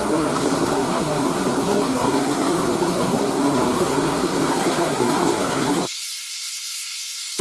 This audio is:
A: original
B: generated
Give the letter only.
B